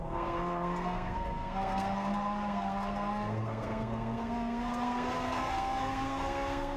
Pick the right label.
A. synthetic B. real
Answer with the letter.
A